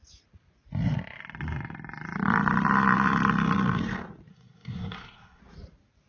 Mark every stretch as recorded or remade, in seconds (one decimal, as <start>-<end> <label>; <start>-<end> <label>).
0.0-4.3 recorded; 4.3-5.4 remade; 5.4-6.1 recorded